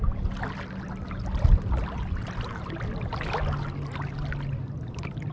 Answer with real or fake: real